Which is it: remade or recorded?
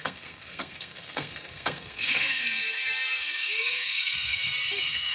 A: remade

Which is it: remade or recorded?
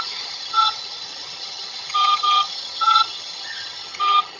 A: remade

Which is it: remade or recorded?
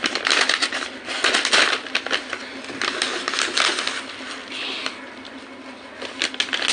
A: recorded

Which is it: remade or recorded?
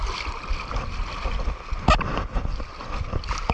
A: recorded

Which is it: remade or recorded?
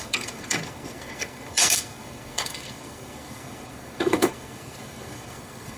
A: remade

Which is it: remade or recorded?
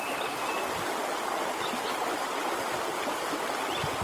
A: recorded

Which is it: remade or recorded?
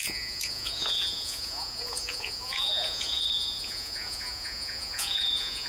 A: remade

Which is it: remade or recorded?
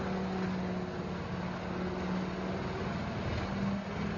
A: recorded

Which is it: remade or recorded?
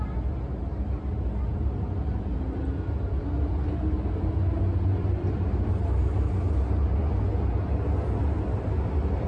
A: recorded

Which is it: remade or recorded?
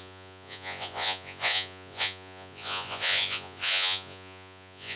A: remade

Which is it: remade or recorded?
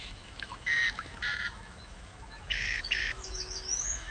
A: remade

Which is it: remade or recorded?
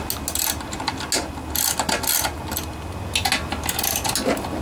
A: recorded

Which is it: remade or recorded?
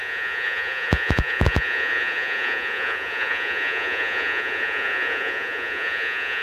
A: remade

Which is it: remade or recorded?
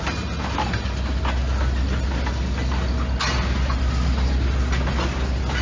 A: recorded